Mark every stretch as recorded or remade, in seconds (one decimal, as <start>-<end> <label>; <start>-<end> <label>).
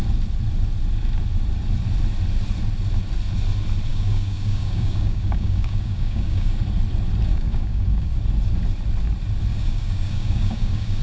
0.0-3.9 recorded; 3.9-6.6 remade; 6.6-7.3 recorded; 7.3-8.1 remade; 8.1-9.5 recorded; 9.5-11.0 remade